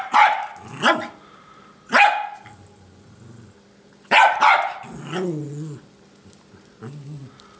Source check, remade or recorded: recorded